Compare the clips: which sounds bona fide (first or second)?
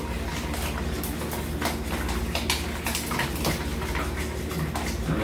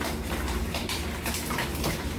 first